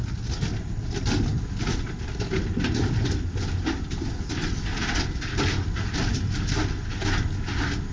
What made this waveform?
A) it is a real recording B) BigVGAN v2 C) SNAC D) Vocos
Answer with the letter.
A